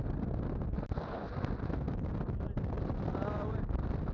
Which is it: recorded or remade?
recorded